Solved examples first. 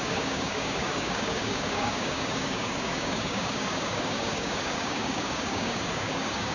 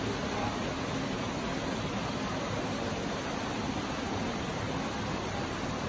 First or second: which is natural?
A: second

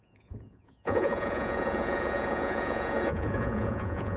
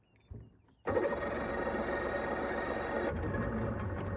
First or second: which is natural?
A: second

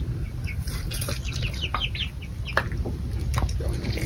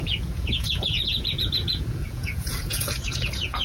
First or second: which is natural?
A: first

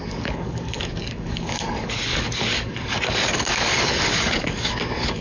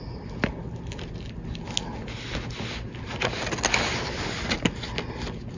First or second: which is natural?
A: second